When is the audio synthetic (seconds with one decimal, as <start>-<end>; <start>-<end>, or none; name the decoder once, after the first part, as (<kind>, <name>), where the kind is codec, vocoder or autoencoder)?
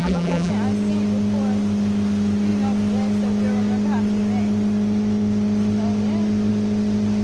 0.0-0.5 (vocoder, BigVGAN v2)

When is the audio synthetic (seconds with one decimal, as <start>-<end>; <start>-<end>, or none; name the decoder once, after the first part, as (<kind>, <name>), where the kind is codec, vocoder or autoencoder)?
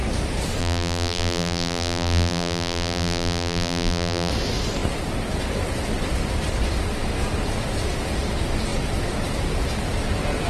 0.6-4.3 (vocoder, BigVGAN v2)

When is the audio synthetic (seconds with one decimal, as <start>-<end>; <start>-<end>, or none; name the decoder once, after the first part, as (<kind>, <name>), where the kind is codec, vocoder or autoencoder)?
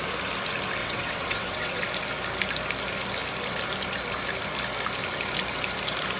0.8-1.8 (vocoder, WaveNeXt)